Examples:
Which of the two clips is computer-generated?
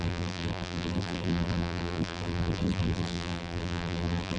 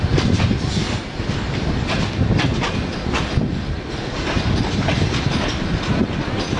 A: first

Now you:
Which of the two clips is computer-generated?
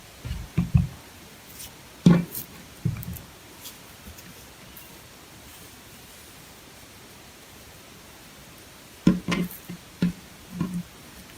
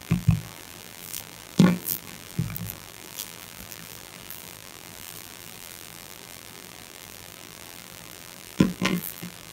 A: second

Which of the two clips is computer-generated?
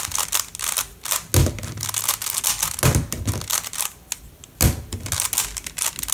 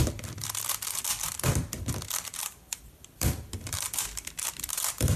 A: second